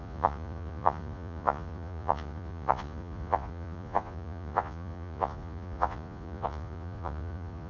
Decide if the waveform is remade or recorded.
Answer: remade